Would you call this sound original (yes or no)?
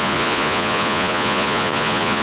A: no